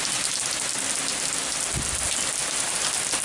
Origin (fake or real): real